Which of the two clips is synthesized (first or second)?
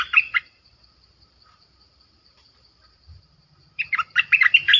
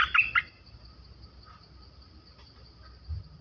first